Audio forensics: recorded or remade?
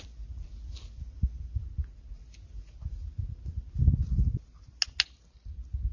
recorded